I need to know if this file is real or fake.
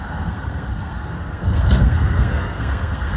fake